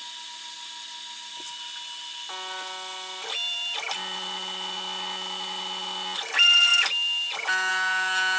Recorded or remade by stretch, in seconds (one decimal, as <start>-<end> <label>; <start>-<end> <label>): 0.0-8.4 recorded